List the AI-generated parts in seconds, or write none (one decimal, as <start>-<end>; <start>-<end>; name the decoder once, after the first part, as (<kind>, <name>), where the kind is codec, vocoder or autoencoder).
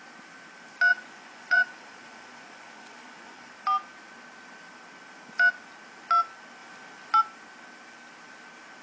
0.9-3.5 (vocoder, Vocos)